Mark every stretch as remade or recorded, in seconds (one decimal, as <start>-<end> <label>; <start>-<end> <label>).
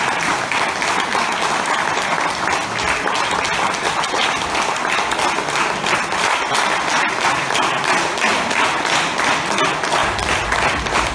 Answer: 0.0-8.3 recorded; 8.3-9.3 remade; 9.3-11.1 recorded